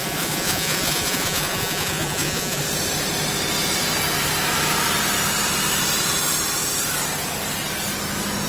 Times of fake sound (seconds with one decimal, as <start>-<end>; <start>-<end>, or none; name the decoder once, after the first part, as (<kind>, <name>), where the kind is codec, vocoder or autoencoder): 0.0-2.6 (vocoder, Vocos)

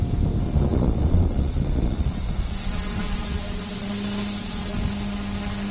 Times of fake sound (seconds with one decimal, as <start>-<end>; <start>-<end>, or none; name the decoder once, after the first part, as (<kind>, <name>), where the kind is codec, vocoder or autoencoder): 0.5-3.9 (vocoder, Vocos); 4.4-4.9

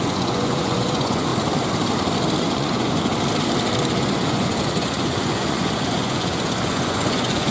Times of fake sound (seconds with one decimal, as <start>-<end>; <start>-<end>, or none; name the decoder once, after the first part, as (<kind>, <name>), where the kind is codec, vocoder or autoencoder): 0.0-1.3 (vocoder, Vocos); 2.4-3.1; 3.9-7.5

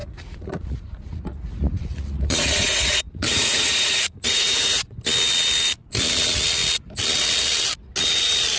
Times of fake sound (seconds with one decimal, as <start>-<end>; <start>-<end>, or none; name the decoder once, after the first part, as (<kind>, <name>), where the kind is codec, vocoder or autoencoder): 0.0-5.0 (vocoder, Vocos)

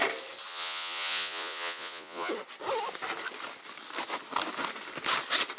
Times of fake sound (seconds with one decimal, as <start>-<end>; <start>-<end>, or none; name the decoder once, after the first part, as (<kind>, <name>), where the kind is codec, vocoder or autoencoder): 0.5-2.3 (vocoder, Vocos)

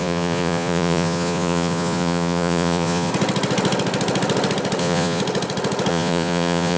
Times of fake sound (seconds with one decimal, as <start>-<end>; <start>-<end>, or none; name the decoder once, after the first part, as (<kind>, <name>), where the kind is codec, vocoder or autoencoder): 0.0-3.1 (vocoder, Vocos); 4.8-5.2; 5.9-6.8

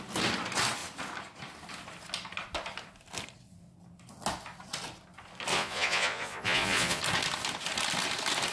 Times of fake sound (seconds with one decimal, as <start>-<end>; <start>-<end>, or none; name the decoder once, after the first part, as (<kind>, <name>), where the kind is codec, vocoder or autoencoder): 5.5-7.0 (vocoder, Vocos)